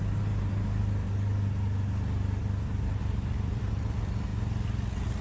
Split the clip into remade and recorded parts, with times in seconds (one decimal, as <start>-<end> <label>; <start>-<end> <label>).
0.0-3.0 recorded; 3.0-3.6 remade; 3.6-5.2 recorded